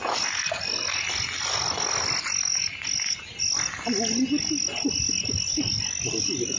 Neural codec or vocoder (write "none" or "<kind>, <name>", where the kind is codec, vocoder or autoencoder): none